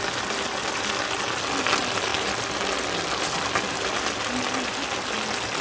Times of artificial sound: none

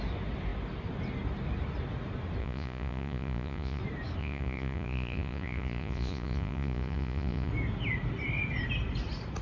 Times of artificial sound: 2.4-3.8 (vocoder, Vocos); 4.2-7.5

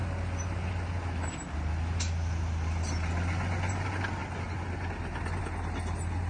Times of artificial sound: none

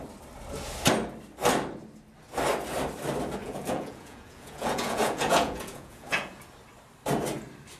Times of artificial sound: 3.4-6.4 (vocoder, Vocos)

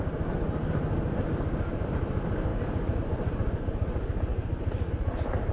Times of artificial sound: none

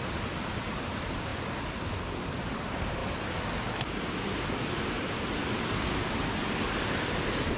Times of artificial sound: none

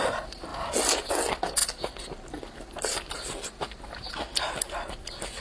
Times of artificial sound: none

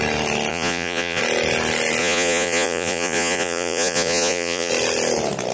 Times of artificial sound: 0.5-1.2 (vocoder, Vocos); 2.0-4.7